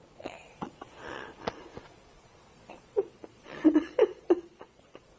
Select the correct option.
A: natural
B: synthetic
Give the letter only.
B